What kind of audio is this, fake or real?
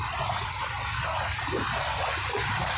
real